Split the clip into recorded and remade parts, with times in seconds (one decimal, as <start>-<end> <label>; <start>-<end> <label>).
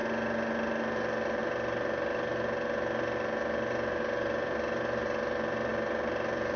0.0-6.6 recorded